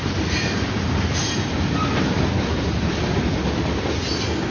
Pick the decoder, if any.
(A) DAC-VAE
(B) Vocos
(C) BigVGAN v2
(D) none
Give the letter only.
D